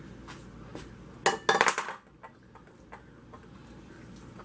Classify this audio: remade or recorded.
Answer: recorded